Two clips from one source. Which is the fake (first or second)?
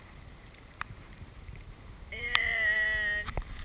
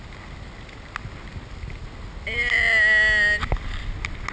first